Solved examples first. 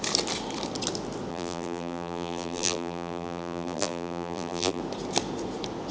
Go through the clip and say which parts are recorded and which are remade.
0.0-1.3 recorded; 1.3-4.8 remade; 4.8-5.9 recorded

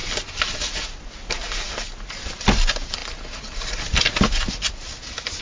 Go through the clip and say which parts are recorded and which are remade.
0.0-5.4 recorded

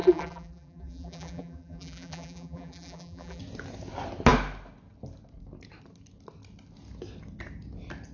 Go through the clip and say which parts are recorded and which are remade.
0.0-3.4 remade; 3.4-8.1 recorded

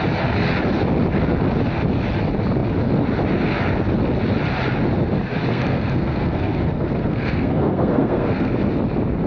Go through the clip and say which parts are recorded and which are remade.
0.0-5.5 recorded; 5.5-8.5 remade; 8.5-9.3 recorded

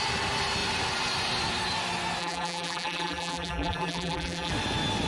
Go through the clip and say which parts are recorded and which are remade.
0.0-2.2 recorded; 2.2-4.5 remade; 4.5-5.1 recorded

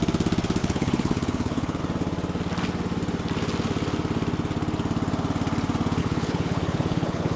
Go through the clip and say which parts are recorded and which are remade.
0.0-0.6 recorded; 0.6-1.8 remade; 1.8-6.0 recorded; 6.0-7.4 remade

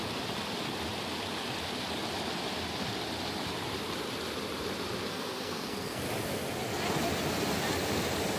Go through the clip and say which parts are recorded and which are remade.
0.0-5.1 recorded; 5.1-6.0 remade; 6.0-8.4 recorded

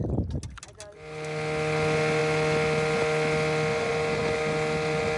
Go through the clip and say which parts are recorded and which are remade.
0.0-5.2 recorded